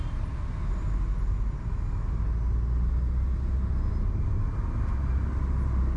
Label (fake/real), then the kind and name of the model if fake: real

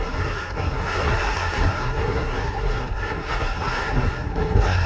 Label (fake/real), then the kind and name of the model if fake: fake, codec, SNAC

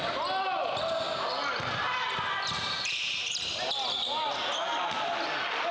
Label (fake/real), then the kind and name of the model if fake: real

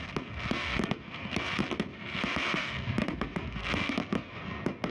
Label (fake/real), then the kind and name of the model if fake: fake, codec, SNAC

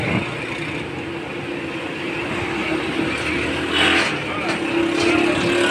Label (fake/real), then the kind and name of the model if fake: real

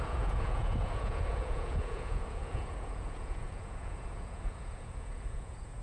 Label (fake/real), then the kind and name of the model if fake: fake, vocoder, Vocos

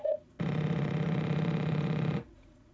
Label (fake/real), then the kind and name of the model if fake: fake, vocoder, Vocos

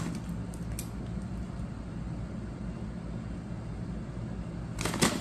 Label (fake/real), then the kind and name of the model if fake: real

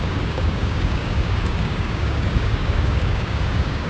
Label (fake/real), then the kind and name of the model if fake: fake, codec, DAC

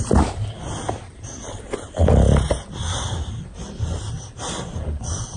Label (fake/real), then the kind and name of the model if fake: real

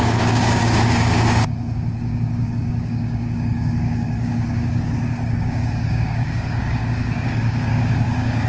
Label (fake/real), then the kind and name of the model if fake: fake, codec, DAC